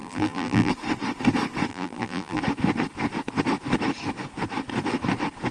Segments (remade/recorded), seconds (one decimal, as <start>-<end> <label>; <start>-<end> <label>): 0.0-0.7 remade; 0.7-1.7 recorded; 1.7-2.4 remade; 2.4-5.5 recorded